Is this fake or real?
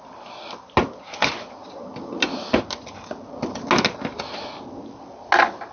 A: real